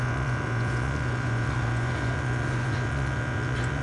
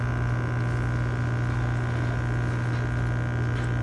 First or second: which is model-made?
first